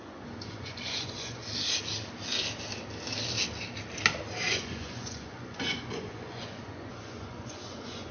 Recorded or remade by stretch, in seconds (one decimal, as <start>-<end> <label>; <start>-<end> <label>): 0.0-1.4 remade; 1.4-4.5 recorded; 4.5-8.1 remade